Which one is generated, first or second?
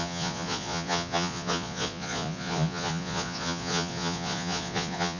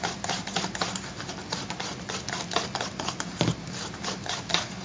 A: first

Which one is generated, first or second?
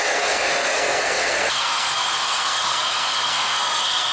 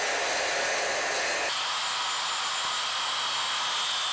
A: first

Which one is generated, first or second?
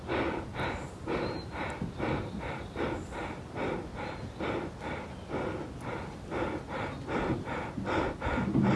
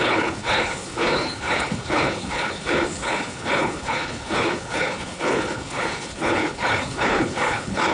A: second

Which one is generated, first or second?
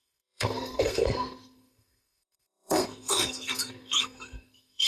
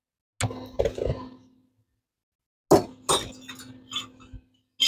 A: first